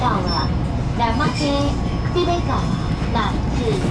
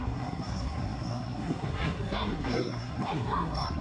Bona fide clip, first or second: first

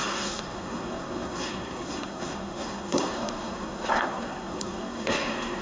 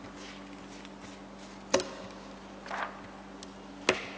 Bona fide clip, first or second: second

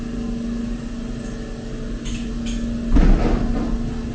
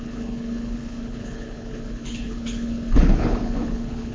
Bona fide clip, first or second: first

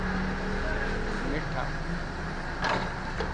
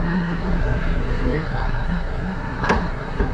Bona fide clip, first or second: first